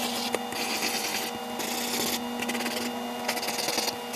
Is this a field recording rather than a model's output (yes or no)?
yes